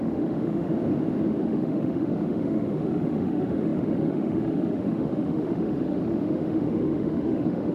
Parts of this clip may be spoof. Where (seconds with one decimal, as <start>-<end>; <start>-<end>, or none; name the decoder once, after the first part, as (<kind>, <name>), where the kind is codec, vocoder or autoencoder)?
0.0-0.7 (autoencoder, DAC-VAE); 1.4-7.7